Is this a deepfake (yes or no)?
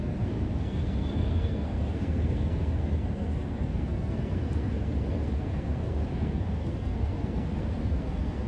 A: yes